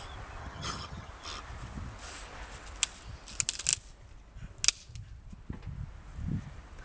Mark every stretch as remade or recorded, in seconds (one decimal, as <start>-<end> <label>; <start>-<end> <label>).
0.0-0.4 recorded; 0.4-1.1 remade; 1.1-6.8 recorded